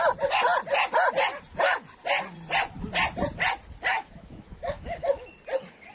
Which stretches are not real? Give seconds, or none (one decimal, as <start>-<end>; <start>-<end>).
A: 3.9-5.3